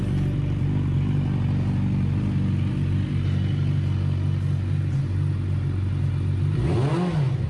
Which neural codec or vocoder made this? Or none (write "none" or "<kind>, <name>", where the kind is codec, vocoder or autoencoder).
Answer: none